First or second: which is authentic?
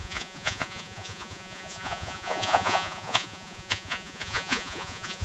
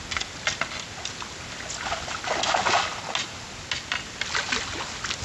second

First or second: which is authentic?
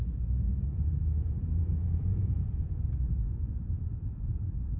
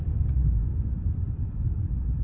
second